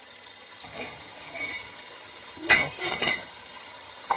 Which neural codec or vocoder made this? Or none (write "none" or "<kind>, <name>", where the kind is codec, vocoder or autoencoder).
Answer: vocoder, HiFi-GAN